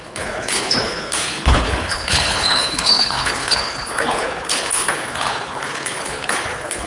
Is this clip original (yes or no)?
no